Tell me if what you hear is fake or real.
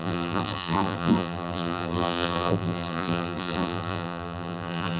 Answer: fake